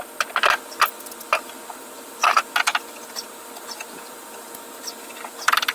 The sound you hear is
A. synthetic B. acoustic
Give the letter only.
B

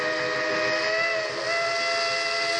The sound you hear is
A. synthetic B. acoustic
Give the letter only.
B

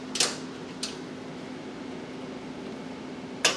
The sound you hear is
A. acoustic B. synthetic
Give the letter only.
A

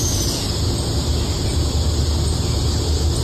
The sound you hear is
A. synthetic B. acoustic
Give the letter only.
B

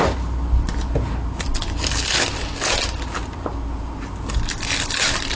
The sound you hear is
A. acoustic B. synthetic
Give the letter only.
A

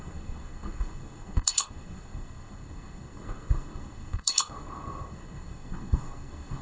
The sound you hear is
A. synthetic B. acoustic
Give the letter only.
A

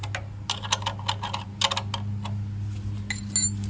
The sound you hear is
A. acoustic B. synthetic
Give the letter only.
A